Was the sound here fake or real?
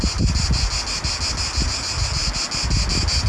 real